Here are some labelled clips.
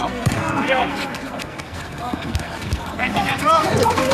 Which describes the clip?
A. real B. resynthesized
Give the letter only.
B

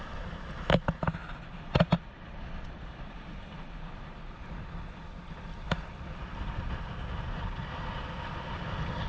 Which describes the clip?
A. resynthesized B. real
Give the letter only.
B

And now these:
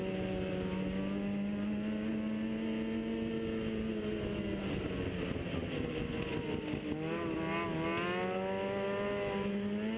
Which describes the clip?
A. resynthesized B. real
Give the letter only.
B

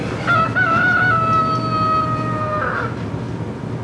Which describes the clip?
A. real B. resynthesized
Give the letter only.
A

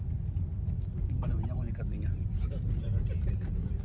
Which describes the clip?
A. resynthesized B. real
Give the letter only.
B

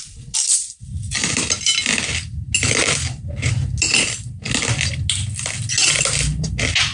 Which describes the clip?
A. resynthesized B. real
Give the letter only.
B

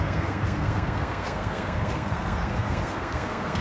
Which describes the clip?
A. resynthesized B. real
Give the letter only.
A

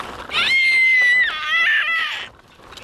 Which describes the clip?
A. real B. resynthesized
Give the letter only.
A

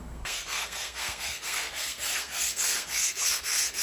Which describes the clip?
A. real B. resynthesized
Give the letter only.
B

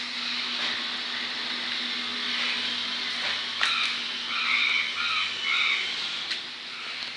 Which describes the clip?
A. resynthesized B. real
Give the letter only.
B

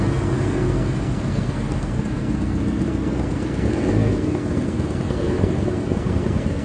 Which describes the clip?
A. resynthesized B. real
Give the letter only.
A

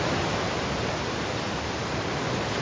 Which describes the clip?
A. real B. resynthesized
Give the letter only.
A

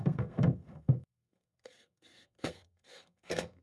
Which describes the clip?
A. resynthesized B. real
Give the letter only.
A